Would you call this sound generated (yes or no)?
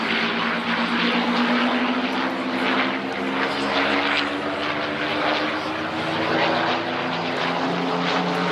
no